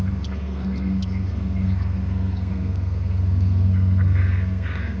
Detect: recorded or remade remade